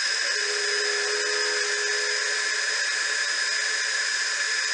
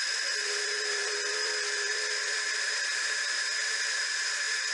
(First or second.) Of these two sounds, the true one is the first